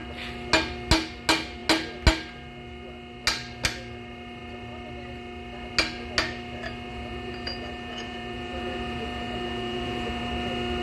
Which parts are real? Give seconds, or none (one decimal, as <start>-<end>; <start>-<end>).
0.0-6.9; 10.2-10.8